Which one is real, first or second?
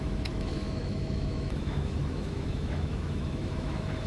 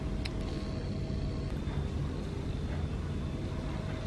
second